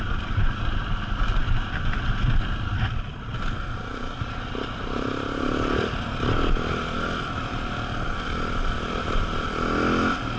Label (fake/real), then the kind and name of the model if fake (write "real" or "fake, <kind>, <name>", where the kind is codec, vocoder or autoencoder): real